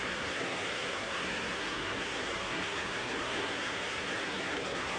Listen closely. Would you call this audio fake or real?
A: fake